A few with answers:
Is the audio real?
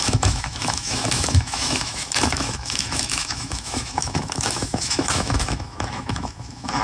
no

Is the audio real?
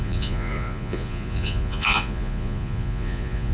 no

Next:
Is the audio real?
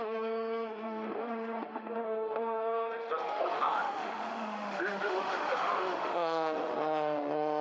no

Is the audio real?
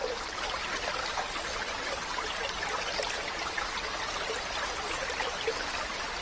yes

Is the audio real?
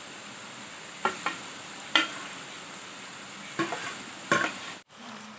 yes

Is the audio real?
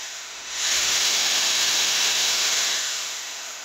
no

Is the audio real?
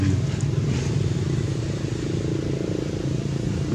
yes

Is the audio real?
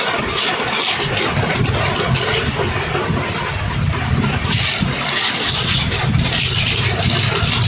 yes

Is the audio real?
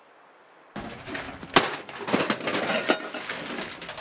yes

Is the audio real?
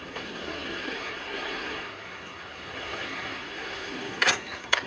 no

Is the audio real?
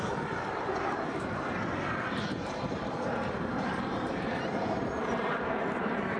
no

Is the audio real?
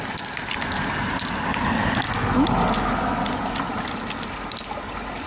yes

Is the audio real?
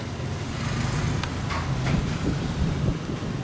yes